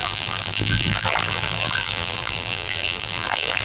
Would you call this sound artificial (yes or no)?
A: yes